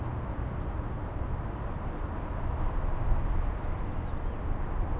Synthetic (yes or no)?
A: no